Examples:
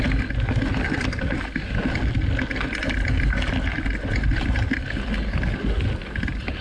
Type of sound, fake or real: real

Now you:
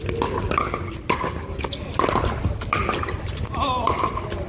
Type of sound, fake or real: real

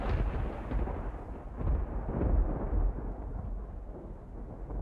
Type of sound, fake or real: real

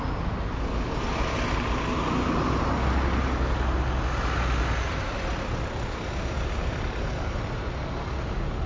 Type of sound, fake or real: real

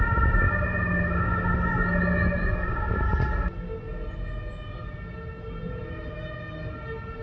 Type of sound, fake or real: real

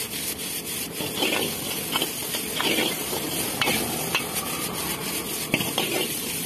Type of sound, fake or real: real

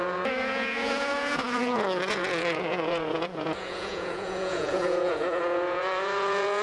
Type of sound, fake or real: fake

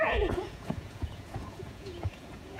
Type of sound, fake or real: fake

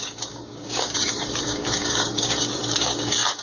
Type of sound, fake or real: fake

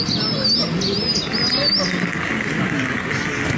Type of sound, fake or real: real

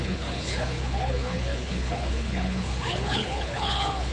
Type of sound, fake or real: fake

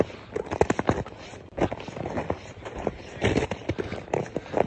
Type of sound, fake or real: real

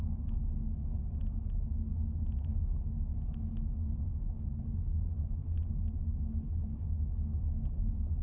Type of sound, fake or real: real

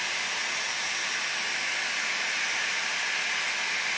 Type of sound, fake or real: real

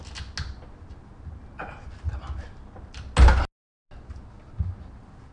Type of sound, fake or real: real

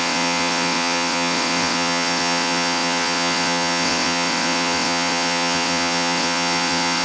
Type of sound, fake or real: fake